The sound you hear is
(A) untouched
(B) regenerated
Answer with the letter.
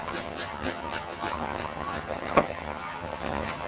B